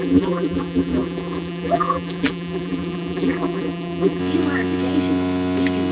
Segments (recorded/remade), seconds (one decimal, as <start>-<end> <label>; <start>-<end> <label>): 0.0-4.2 remade; 4.2-5.9 recorded